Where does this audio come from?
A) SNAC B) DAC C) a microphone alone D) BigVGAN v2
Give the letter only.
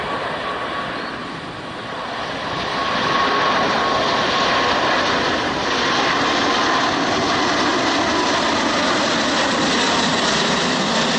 C